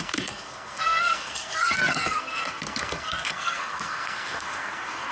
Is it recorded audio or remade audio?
remade